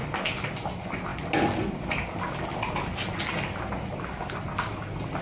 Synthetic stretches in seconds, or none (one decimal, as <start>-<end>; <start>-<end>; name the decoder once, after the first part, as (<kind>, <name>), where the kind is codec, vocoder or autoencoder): none

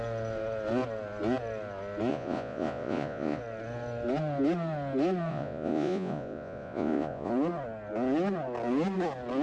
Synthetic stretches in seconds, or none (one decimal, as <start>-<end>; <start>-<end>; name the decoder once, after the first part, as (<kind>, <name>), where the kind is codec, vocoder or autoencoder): 2.1-3.4 (vocoder, Vocos); 5.3-7.3

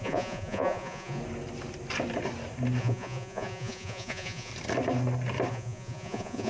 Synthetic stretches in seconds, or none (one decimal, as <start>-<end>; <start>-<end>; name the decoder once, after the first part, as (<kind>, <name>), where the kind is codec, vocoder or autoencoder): 0.0-1.2 (vocoder, Vocos); 2.8-4.5; 5.5-6.5

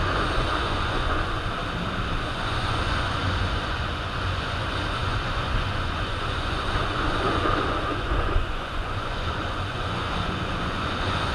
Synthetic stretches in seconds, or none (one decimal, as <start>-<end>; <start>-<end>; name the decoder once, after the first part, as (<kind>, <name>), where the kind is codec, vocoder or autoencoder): 0.0-1.6 (vocoder, Vocos); 2.2-11.3

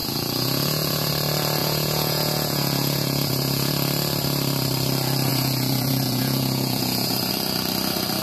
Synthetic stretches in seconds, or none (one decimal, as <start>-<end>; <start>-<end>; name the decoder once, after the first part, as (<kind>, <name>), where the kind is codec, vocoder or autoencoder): 0.0-1.1 (vocoder, Vocos); 1.6-3.7; 5.3-7.3

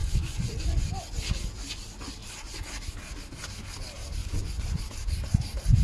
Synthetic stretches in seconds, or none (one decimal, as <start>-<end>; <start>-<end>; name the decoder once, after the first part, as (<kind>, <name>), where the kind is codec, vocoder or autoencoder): 0.0-0.9 (vocoder, Vocos); 4.2-4.8

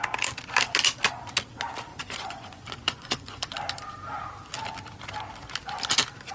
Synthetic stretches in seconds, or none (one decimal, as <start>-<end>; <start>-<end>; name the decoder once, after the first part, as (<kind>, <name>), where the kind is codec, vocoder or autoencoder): 1.9-3.5 (vocoder, Vocos)

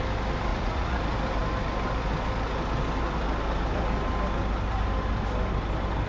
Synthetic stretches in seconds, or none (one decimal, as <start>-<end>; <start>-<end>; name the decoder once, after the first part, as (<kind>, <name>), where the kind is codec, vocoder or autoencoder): 0.5-1.0 (vocoder, Vocos)